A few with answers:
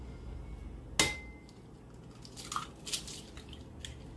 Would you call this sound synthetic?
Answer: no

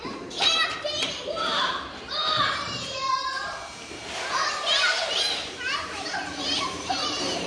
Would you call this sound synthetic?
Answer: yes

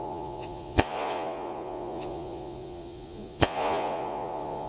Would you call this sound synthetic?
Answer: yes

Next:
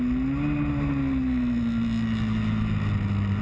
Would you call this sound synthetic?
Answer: no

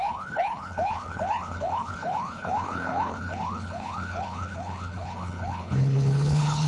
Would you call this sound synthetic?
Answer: yes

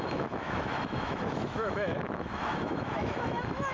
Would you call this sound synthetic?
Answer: yes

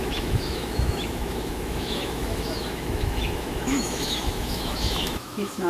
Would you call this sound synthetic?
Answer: yes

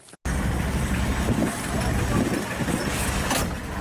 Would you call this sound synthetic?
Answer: no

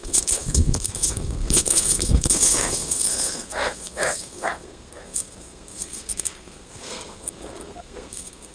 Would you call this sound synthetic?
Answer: yes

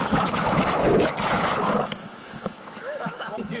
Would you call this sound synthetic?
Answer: yes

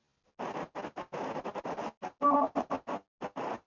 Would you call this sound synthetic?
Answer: no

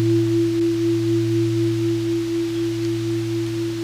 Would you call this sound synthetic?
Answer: no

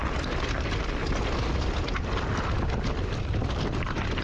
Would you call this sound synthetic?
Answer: no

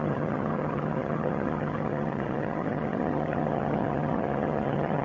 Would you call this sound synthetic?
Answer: yes